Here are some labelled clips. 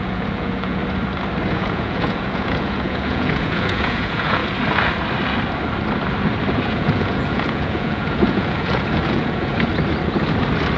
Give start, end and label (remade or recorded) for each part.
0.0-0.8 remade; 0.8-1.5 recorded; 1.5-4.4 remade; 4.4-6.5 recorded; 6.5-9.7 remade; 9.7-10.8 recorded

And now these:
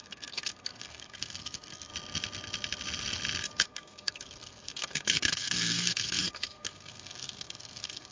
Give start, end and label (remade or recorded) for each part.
0.0-1.9 remade; 1.9-3.6 recorded; 3.6-8.1 remade

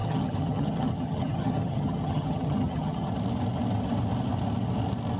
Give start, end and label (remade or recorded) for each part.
0.0-3.1 remade; 3.1-5.2 recorded

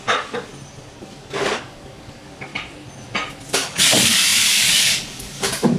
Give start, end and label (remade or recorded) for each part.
0.0-0.5 remade; 0.5-1.0 recorded; 1.0-2.5 remade; 2.5-3.5 recorded; 3.5-5.8 remade

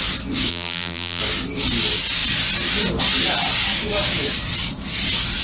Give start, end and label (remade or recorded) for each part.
0.0-0.5 recorded; 0.5-1.2 remade; 1.2-5.4 recorded